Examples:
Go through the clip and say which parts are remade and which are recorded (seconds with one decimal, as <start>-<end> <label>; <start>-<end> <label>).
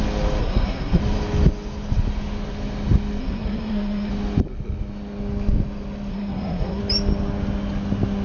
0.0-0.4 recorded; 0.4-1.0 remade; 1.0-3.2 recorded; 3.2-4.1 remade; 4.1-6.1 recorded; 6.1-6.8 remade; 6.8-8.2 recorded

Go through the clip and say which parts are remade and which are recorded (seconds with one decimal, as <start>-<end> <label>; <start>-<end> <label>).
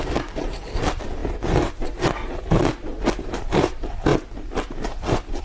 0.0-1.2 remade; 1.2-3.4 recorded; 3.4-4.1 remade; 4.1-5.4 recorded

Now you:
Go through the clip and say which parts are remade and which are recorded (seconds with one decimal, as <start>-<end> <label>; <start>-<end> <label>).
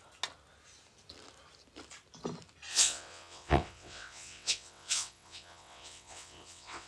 0.0-2.7 recorded; 2.7-6.9 remade